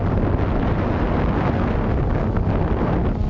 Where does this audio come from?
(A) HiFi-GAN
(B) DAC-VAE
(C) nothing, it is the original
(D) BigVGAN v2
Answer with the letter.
C